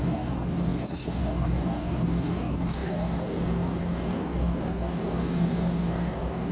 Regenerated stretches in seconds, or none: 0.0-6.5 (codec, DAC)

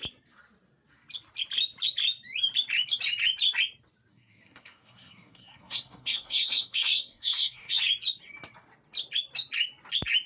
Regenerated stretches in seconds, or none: 4.1-7.7 (codec, SNAC)

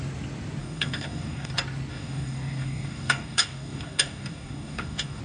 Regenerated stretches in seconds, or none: 0.6-1.5 (codec, DAC); 1.9-5.2

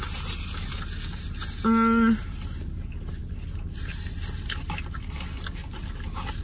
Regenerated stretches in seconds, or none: none

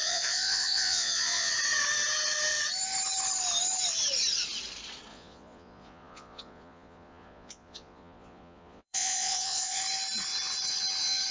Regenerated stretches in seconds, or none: 0.0-1.5 (vocoder, Vocos); 5.1-9.8

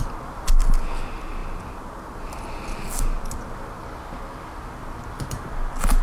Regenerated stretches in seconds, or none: none

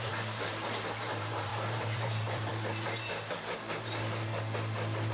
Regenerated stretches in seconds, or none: 0.0-4.3 (vocoder, BigVGAN v2)

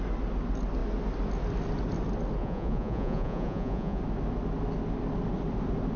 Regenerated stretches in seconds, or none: 2.4-4.0 (vocoder, Vocos)